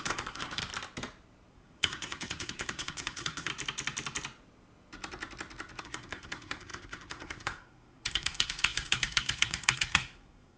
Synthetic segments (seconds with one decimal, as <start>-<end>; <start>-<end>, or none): 0.0-0.6; 1.5-3.5; 5.8-10.6